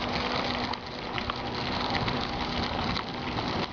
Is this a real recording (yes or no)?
yes